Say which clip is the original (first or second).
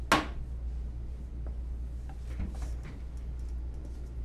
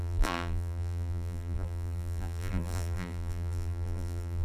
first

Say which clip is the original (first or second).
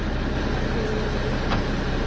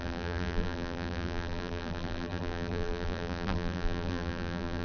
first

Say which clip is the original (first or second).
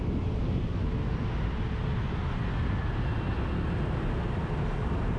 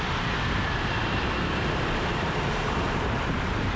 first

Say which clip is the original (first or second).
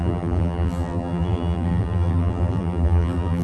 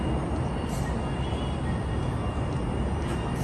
second